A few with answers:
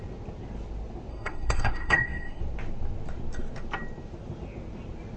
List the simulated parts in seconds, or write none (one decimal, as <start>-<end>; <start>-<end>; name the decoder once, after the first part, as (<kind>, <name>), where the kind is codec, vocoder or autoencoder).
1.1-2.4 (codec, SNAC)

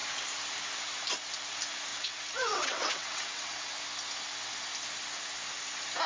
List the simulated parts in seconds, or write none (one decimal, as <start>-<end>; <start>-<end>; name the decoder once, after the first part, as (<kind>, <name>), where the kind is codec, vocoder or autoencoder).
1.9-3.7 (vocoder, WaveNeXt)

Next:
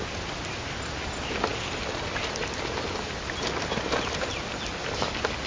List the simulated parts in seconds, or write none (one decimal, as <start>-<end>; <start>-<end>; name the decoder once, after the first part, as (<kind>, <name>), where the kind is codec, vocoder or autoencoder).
none

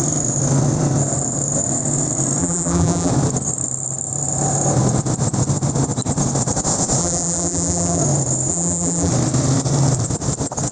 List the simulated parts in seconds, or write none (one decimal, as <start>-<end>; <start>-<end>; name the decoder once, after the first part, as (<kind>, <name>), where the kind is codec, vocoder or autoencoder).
2.4-3.1 (vocoder, BigVGAN v2); 7.0-8.0; 8.5-9.1

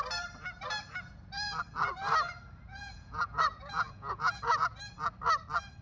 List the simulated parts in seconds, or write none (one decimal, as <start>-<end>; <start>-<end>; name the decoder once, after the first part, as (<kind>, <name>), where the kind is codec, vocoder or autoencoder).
2.7-4.4 (vocoder, Vocos)

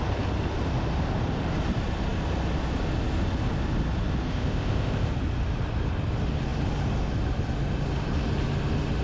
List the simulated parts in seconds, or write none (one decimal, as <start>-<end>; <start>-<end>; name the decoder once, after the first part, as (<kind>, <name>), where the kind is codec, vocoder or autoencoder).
4.3-5.1 (codec, ZipCodec)